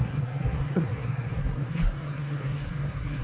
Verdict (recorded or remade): remade